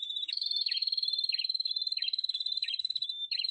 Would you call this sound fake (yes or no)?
yes